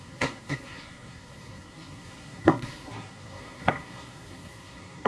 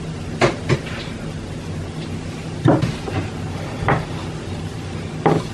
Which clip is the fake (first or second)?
first